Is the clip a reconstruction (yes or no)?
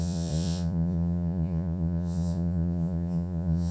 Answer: yes